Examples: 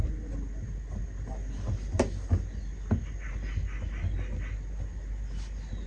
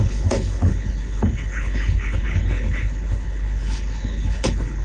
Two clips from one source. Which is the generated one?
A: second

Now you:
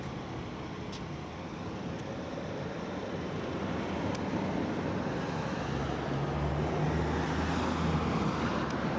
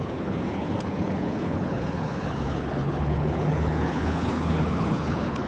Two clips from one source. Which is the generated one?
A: second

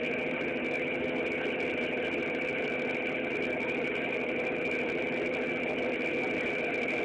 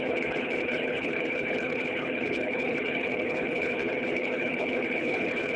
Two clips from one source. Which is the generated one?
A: second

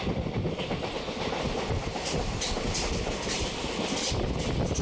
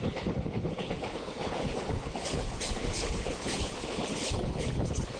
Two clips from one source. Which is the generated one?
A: second